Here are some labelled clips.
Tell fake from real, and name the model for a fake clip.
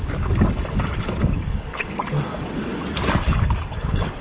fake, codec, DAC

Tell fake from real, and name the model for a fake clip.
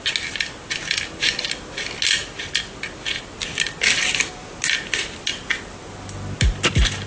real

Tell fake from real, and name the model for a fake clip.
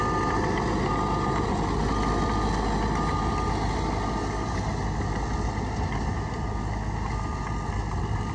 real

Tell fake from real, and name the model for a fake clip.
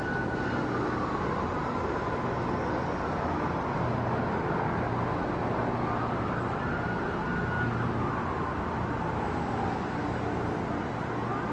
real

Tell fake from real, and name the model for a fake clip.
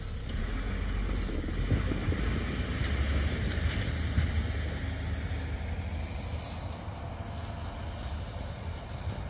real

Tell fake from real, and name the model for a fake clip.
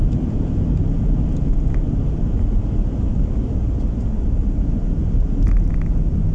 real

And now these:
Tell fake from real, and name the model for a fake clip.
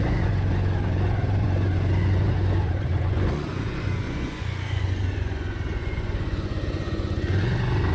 fake, vocoder, Vocos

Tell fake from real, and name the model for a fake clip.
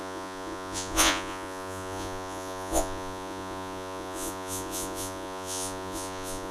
fake, vocoder, Vocos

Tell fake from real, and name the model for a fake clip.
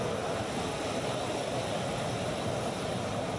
real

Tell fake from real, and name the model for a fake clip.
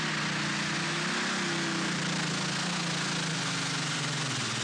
real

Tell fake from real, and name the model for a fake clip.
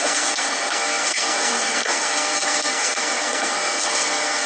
fake, codec, SNAC